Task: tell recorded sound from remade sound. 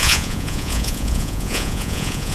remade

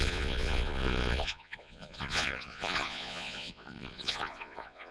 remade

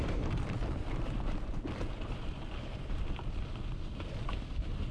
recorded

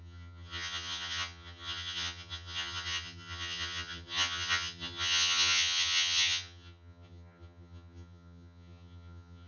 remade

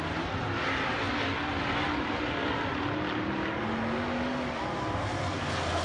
recorded